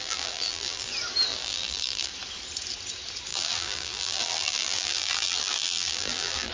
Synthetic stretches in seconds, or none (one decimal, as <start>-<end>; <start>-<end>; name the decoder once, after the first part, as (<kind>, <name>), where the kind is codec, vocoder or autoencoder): 0.0-0.9 (vocoder, BigVGAN v2); 1.3-2.1; 3.3-6.5